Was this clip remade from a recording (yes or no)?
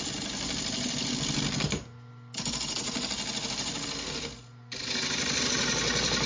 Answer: no